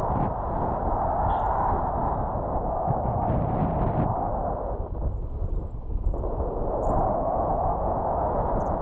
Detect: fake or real real